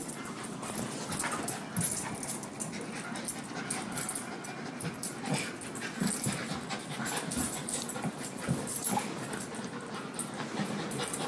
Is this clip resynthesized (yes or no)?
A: no